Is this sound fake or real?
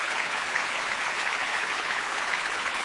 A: fake